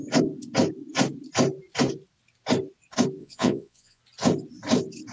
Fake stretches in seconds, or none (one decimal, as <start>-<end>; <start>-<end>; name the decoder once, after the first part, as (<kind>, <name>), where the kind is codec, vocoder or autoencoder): 3.2-4.0 (vocoder, Vocos)